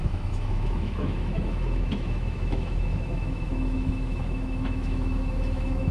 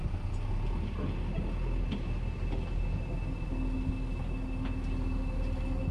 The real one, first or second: second